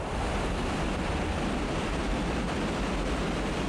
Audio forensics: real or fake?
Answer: fake